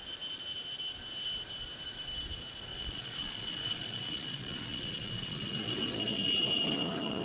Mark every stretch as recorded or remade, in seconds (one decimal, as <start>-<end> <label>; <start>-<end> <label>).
0.0-2.7 recorded; 2.7-7.2 remade